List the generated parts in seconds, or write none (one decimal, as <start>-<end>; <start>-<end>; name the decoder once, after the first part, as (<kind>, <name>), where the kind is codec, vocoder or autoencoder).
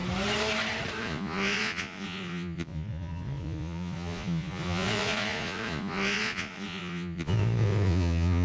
1.0-8.4 (vocoder, Vocos)